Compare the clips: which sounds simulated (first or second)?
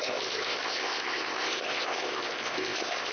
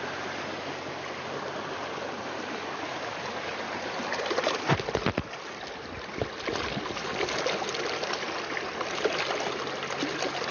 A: first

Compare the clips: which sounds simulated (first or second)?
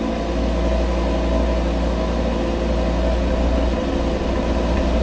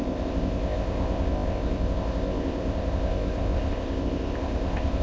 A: second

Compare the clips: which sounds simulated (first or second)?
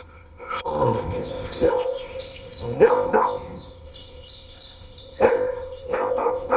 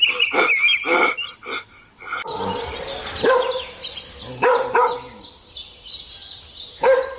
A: first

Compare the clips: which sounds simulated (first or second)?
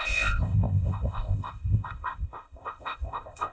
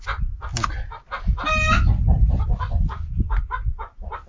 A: first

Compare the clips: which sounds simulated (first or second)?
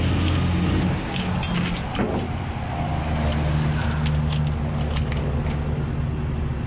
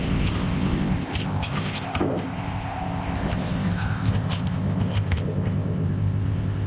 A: second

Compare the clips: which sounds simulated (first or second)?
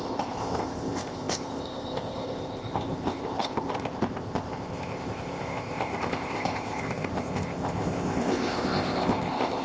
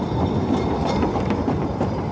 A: first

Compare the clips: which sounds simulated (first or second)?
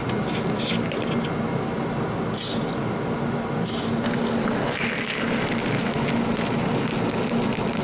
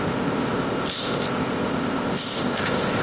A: second